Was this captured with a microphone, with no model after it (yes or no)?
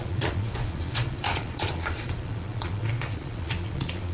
no